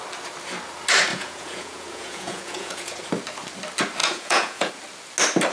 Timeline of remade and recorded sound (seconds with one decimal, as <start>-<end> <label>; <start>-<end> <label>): 0.0-1.1 recorded; 1.1-3.0 remade; 3.0-4.0 recorded; 4.0-4.7 remade; 4.7-5.5 recorded